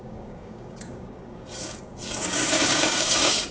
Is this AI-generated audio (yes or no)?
yes